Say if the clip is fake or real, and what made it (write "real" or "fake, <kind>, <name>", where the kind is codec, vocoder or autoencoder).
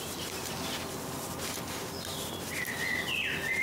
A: real